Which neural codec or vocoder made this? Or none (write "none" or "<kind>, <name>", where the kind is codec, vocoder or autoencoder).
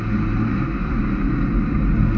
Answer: none